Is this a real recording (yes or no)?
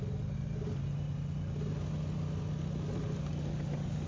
yes